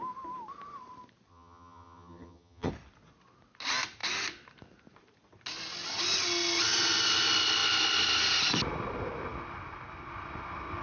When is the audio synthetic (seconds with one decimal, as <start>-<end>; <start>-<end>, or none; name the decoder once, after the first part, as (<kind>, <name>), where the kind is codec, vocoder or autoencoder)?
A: 1.3-2.7 (vocoder, HiFi-GAN)